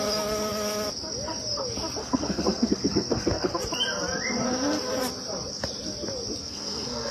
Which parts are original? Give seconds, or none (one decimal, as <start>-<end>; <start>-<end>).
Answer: 0.0-2.0; 3.6-6.4